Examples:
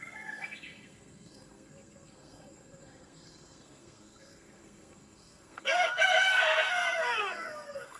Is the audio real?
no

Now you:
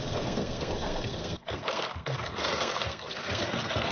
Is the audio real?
no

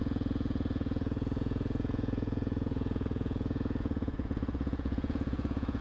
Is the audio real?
no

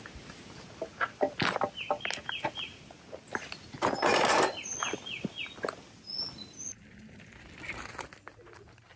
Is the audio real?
yes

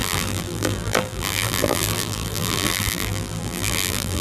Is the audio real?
no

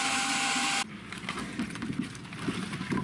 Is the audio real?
yes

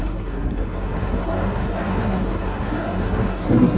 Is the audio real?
no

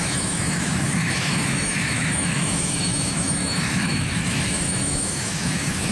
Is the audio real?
no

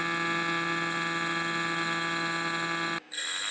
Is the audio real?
yes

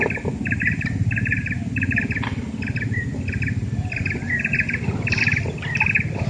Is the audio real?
yes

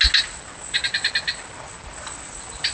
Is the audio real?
yes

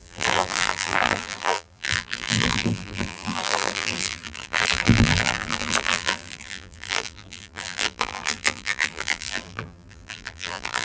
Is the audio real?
no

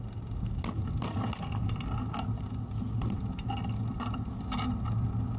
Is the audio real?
yes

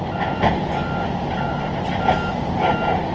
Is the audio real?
yes